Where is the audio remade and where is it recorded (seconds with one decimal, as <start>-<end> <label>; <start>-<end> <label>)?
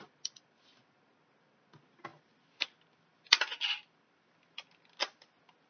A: 0.0-5.7 recorded